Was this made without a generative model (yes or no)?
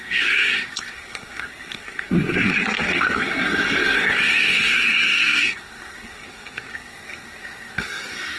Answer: no